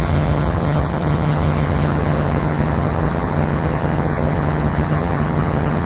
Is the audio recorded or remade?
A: remade